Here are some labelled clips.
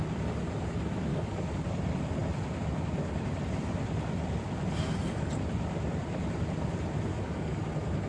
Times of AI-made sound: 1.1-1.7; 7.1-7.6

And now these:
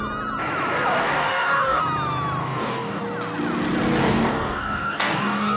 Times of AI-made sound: 1.0-1.8; 2.4-3.0; 4.0-5.6

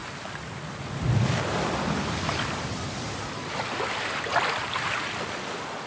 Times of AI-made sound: none

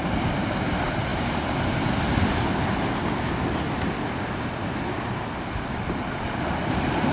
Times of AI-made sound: none

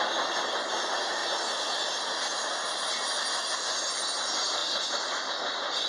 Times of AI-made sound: none

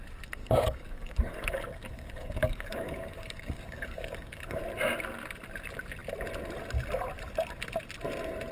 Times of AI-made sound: 0.4-4.6

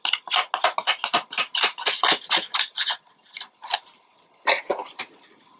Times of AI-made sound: none